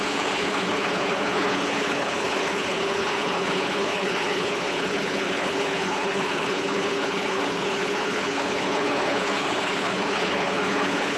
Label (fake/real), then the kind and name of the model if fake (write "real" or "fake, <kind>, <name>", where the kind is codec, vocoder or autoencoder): fake, codec, HILCodec